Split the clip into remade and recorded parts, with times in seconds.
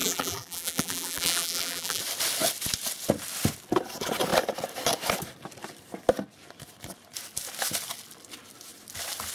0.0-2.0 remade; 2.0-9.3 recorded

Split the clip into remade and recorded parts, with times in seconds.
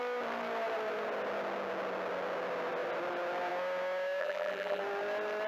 0.0-4.2 recorded; 4.2-4.8 remade; 4.8-5.5 recorded